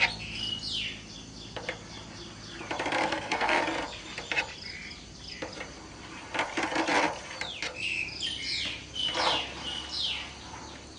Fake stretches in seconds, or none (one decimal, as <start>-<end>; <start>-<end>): 3.0-3.6